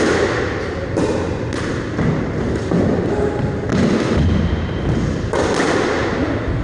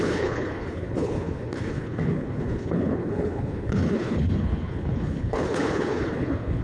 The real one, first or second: first